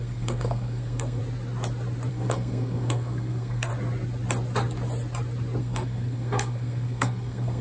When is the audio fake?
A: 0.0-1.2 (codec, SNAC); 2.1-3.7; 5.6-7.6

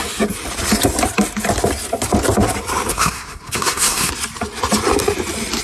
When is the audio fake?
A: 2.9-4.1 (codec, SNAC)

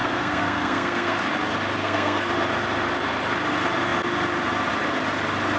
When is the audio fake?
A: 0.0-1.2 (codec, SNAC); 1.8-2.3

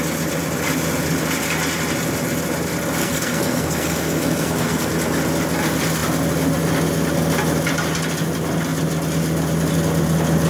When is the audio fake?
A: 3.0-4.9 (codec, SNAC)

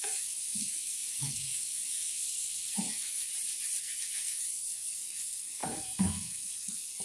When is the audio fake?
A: 0.0-3.3 (codec, SNAC); 3.8-7.0